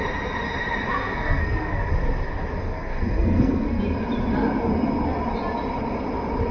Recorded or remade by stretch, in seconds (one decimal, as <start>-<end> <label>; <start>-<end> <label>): 0.0-0.9 recorded; 0.9-1.9 remade; 1.9-2.7 recorded; 2.7-3.8 remade; 3.8-6.5 recorded